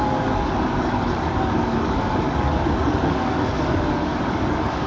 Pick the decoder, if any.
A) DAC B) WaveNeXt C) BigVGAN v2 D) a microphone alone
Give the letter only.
A